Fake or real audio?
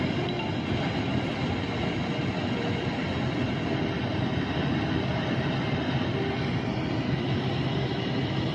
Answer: real